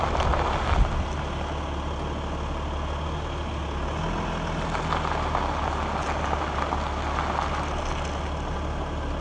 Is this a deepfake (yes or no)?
no